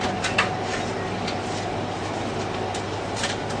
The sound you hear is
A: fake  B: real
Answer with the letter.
B